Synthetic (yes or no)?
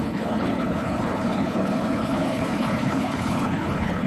yes